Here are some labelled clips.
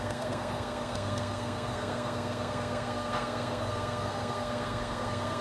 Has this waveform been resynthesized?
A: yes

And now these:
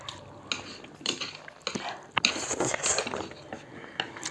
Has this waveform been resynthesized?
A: no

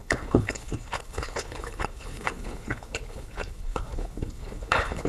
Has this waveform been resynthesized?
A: yes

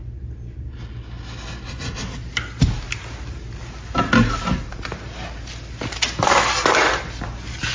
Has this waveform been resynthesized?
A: no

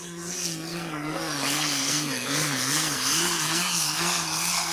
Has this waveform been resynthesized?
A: yes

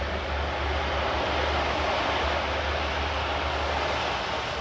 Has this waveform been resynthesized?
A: no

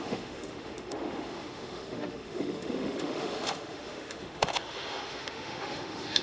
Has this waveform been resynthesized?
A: yes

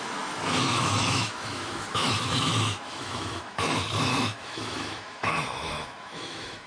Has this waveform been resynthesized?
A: yes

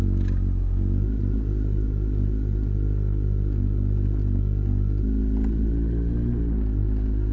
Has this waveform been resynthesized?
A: no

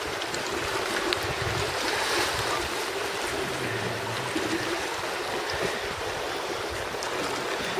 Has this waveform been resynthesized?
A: no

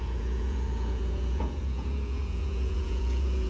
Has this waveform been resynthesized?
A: yes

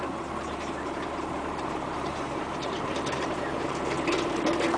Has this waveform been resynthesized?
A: yes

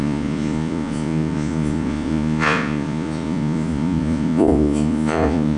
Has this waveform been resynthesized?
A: yes